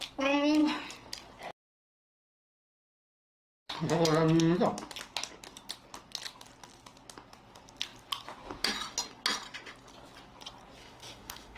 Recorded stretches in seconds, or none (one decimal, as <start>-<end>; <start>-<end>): 0.0-10.8